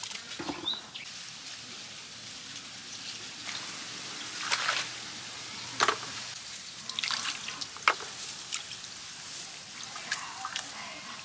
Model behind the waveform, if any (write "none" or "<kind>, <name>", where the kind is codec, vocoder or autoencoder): none